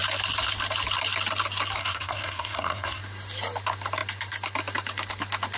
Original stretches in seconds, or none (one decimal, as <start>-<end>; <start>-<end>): 0.0-1.8; 3.0-5.6